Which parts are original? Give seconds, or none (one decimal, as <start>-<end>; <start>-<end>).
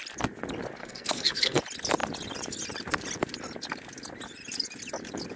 0.0-0.8; 1.6-5.4